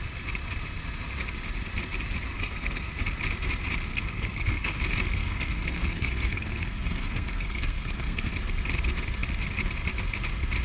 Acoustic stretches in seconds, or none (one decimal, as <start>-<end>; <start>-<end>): 0.0-2.3; 2.9-3.9; 4.8-5.2; 8.3-10.6